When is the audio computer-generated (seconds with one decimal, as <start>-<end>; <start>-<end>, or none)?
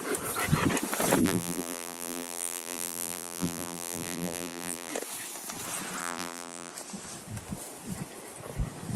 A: 1.2-4.9; 6.0-6.7